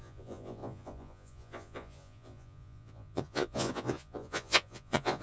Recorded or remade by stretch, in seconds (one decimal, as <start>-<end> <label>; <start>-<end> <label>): 0.0-5.2 remade